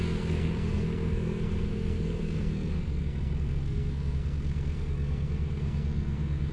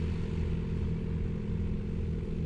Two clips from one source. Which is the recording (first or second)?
second